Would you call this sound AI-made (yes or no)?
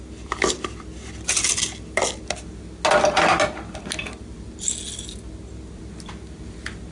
no